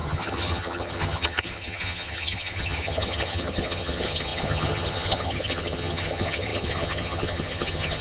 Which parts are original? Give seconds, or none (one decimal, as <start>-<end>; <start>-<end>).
none